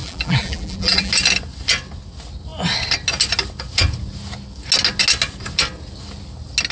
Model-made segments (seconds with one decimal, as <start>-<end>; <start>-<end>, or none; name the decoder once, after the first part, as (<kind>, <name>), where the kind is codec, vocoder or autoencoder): 0.0-1.1 (vocoder, BigVGAN v2)